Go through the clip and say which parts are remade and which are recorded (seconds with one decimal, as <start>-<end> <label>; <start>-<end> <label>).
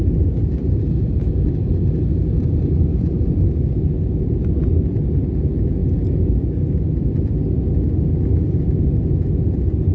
0.0-0.6 recorded; 0.6-1.8 remade; 1.8-2.9 recorded; 2.9-3.5 remade; 3.5-9.9 recorded